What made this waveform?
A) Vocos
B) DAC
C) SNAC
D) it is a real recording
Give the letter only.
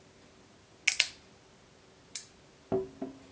D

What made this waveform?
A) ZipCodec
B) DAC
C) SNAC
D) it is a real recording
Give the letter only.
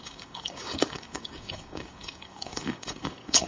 B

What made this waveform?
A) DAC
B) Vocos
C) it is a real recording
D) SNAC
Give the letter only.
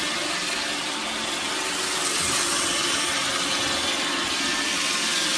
C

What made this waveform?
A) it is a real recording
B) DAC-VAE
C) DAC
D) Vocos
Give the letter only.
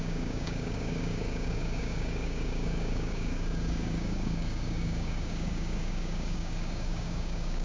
C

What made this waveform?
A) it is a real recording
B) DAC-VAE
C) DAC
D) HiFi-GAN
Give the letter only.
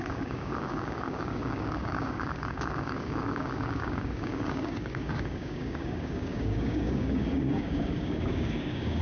C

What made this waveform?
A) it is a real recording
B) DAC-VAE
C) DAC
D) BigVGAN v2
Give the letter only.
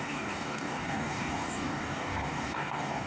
C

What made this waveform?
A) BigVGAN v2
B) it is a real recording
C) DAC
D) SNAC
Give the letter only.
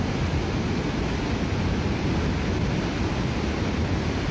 B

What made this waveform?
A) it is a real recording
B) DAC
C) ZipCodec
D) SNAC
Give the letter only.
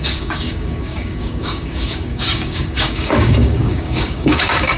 B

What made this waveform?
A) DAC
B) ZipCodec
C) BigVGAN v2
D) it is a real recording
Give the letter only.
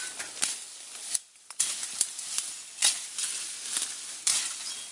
D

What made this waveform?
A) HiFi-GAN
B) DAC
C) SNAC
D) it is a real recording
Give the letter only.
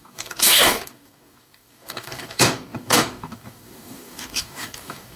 B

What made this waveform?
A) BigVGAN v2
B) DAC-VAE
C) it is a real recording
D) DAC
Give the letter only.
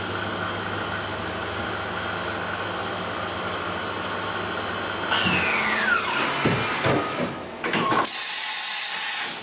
C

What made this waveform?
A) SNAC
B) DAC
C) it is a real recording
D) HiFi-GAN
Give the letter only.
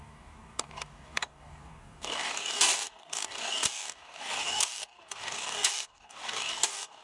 B